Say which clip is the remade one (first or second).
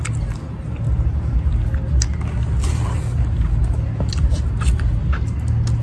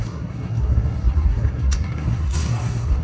second